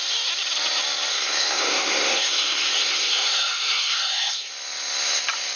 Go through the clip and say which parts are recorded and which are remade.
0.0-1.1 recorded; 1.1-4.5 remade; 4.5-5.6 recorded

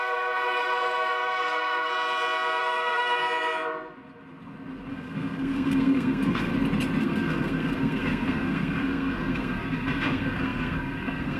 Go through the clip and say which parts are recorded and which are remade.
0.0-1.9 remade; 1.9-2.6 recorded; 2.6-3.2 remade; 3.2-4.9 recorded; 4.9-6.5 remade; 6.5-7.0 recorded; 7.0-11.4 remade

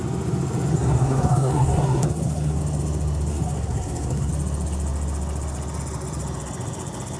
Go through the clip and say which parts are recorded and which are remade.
0.0-0.7 recorded; 0.7-2.6 remade; 2.6-3.3 recorded; 3.3-4.3 remade; 4.3-7.2 recorded